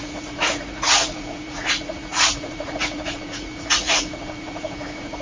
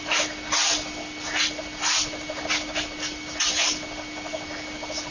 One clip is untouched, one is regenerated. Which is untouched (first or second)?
second